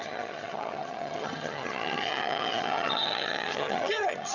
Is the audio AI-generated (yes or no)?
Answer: yes